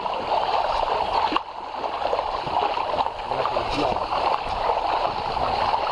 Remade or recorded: recorded